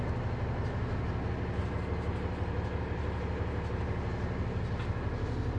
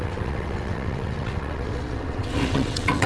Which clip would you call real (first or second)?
first